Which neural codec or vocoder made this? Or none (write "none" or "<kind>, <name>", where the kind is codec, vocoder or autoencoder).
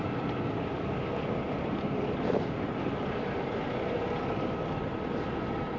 none